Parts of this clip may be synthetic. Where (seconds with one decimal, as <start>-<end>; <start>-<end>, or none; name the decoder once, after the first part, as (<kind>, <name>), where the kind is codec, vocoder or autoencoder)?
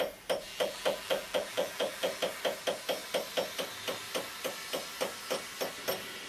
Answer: 0.5-2.2 (vocoder, BigVGAN v2)